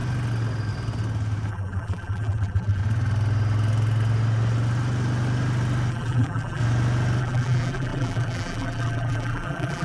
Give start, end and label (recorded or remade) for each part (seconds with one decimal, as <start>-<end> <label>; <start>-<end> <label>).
0.0-1.5 recorded; 1.5-2.8 remade; 2.8-5.9 recorded; 5.9-6.6 remade; 6.6-7.2 recorded; 7.2-9.8 remade